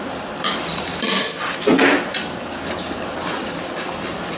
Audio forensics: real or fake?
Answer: fake